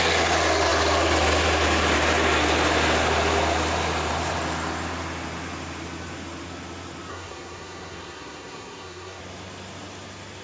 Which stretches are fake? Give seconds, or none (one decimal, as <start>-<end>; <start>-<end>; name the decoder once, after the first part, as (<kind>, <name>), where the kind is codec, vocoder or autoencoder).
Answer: 7.1-9.2 (codec, SNAC)